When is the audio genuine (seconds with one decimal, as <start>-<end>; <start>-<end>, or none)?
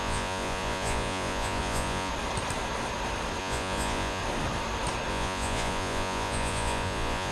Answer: 2.1-3.4; 4.2-5.1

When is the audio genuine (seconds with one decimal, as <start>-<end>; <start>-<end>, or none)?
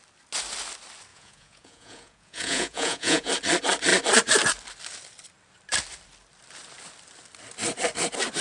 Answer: 0.0-1.1; 3.3-8.4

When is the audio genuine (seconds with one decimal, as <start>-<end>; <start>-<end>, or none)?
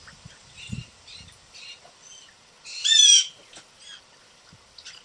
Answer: 0.0-5.0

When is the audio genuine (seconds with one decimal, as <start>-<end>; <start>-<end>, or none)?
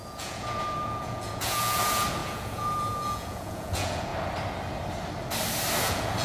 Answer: 4.1-5.8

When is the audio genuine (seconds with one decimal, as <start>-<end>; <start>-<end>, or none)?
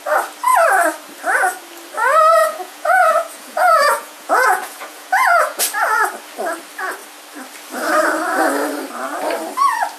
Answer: 0.0-2.4; 5.6-10.0